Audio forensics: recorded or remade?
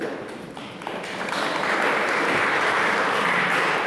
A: recorded